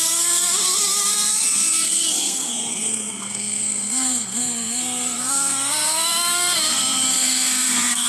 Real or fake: fake